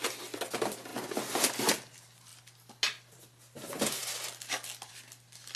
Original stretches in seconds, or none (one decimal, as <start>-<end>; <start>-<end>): 0.0-5.6